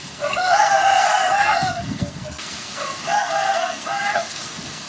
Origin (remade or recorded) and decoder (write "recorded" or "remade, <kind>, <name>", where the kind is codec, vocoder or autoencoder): remade, codec, SNAC